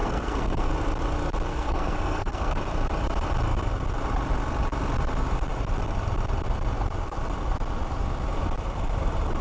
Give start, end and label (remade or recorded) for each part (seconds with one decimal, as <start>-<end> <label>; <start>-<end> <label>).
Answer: 0.0-0.7 remade; 0.7-1.5 recorded; 1.5-2.6 remade; 2.6-9.4 recorded